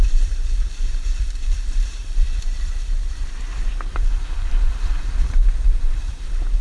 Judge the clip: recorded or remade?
remade